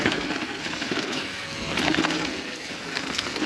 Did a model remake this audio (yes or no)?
yes